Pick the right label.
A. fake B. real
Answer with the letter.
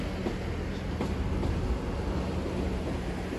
B